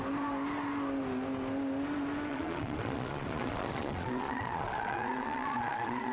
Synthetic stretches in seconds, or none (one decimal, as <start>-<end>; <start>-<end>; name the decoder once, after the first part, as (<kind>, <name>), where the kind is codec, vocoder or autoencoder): 2.3-6.1 (vocoder, Vocos)